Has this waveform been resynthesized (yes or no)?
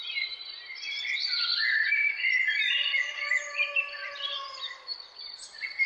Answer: yes